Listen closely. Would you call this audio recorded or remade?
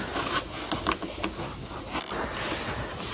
recorded